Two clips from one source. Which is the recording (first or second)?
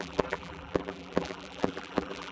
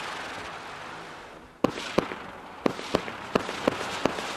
second